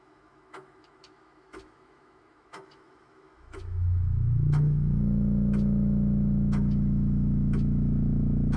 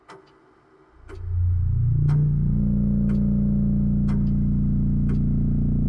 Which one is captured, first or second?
second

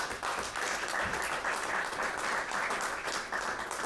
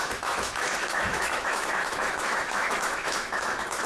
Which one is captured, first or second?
first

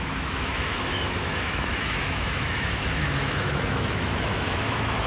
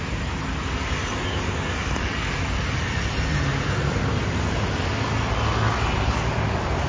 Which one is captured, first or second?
second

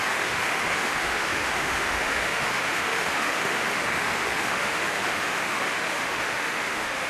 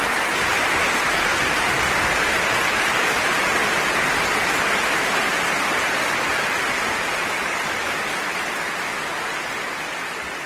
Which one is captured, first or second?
second